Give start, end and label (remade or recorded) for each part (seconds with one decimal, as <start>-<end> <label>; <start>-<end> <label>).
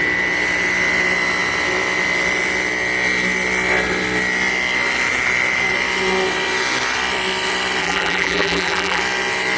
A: 0.0-7.8 recorded; 7.8-9.0 remade; 9.0-9.6 recorded